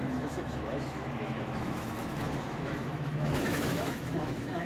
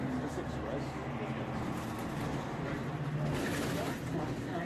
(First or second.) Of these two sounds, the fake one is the first